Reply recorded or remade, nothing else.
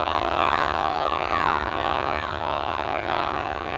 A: remade